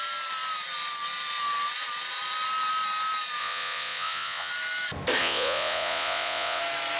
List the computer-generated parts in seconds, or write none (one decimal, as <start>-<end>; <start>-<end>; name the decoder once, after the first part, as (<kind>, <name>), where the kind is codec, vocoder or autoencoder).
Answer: 3.4-4.5 (vocoder, Vocos); 5.2-6.6